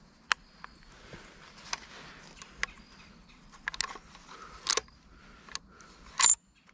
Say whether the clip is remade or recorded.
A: recorded